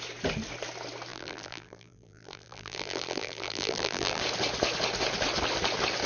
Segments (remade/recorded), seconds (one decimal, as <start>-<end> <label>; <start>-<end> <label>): 0.0-1.1 recorded; 1.1-4.2 remade; 4.2-6.1 recorded